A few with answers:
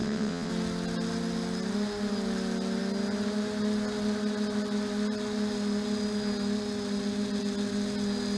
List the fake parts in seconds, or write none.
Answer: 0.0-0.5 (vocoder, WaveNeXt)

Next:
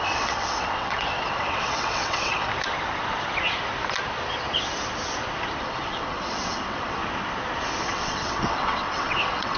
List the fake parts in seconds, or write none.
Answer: 0.0-2.5 (vocoder, WaveNeXt); 5.6-7.0; 7.8-9.6